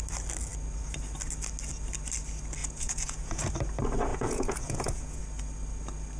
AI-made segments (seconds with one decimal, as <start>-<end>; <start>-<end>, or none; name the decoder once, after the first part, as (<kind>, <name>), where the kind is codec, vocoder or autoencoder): 2.6-3.5 (vocoder, Vocos); 4.1-5.2